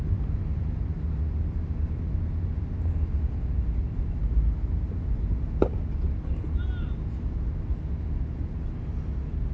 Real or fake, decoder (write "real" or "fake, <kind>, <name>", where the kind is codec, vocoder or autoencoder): real